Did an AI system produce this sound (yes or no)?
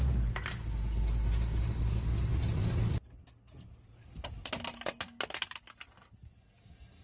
no